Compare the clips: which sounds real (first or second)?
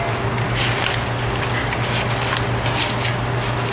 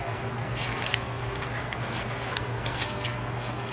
first